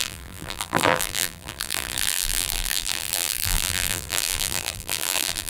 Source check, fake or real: fake